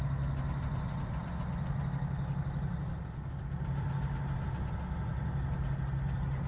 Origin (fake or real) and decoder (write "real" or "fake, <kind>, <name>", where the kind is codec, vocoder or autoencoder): real